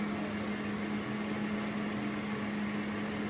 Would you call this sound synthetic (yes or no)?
no